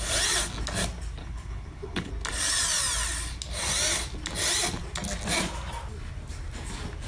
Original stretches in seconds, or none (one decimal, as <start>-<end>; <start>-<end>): 0.0-1.2; 2.1-7.1